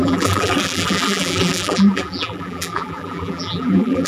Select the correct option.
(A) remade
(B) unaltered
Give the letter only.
A